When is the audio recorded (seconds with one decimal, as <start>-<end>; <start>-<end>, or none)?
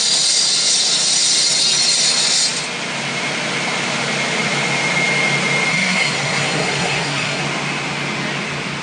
0.0-5.7; 7.4-8.8